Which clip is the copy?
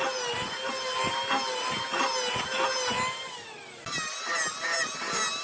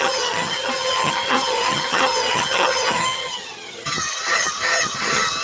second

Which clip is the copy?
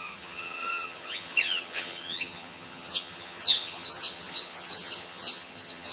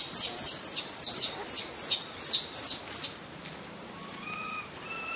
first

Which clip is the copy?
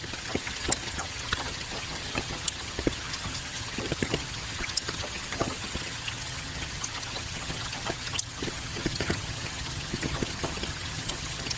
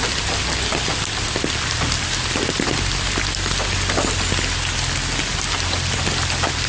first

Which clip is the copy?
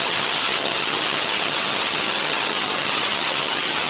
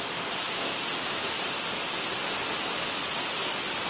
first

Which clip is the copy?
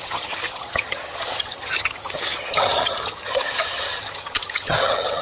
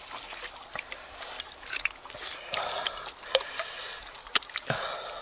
first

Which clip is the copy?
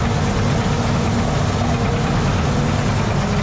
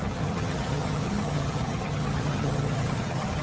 second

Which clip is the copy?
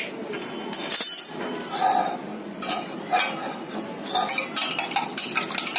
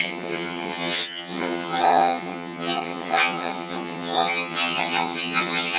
second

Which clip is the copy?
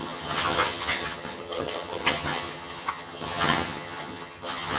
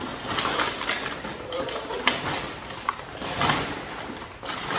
first